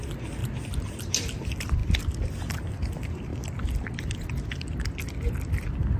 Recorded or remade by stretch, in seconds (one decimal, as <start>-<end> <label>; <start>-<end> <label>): 0.0-6.0 recorded